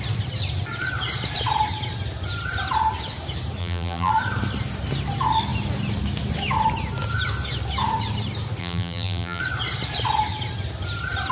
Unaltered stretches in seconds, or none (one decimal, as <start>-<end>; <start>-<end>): 0.0-3.6; 4.1-8.6; 9.4-11.3